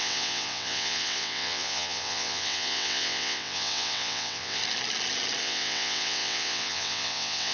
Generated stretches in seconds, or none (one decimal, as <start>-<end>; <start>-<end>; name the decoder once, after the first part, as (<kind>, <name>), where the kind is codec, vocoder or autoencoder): 0.0-4.6 (vocoder, WaveNeXt); 5.4-7.5